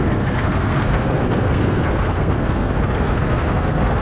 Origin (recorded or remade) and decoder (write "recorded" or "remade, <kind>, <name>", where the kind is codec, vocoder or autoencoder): remade, codec, SNAC